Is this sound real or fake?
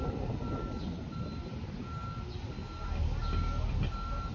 real